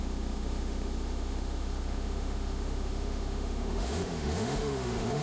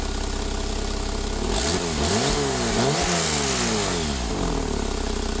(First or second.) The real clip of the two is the second